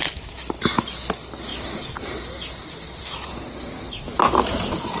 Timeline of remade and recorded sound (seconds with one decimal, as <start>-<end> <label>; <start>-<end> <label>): 0.0-0.6 remade; 0.6-1.5 recorded; 1.5-4.5 remade; 4.5-5.0 recorded